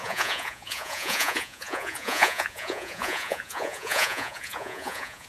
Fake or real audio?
fake